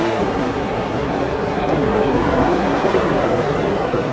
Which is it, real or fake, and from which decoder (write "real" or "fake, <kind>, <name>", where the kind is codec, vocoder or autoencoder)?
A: fake, codec, SNAC